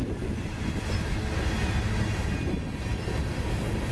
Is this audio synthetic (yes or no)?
no